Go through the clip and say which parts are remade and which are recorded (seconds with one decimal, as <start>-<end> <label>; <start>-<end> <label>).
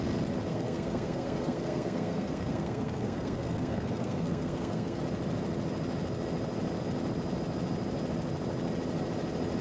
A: 0.0-0.5 recorded; 0.5-5.0 remade; 5.0-9.6 recorded